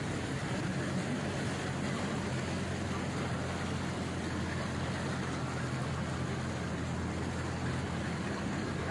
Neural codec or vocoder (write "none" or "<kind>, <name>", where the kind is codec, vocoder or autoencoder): none